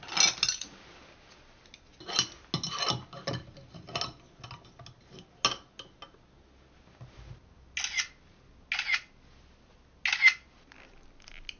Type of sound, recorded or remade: recorded